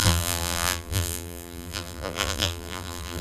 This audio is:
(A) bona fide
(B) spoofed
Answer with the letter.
B